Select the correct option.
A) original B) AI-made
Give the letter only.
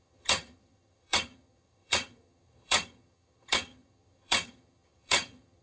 B